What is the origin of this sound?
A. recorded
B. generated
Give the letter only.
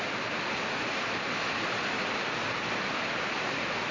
A